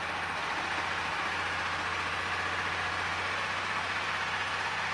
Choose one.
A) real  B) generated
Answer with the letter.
A